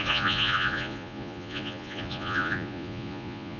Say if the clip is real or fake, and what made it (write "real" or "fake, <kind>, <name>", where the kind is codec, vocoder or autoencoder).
fake, vocoder, Vocos